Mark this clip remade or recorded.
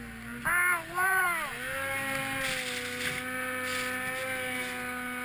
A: recorded